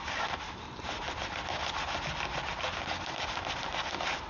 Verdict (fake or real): real